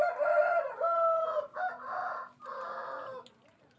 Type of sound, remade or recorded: recorded